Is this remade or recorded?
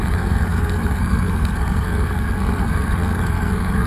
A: remade